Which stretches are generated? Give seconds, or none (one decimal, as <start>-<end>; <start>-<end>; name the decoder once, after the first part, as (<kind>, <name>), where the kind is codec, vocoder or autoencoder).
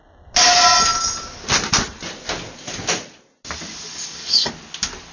3.9-4.5 (codec, DAC)